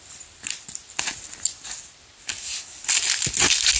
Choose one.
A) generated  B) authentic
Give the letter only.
B